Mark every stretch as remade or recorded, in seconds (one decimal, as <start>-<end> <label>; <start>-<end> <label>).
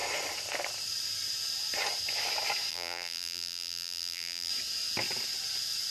0.0-2.7 recorded; 2.7-4.5 remade; 4.5-5.9 recorded